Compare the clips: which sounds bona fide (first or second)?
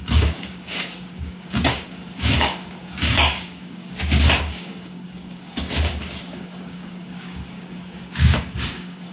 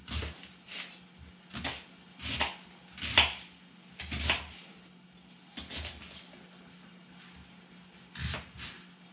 second